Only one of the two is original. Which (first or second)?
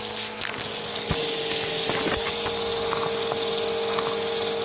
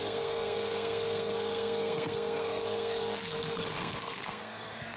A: first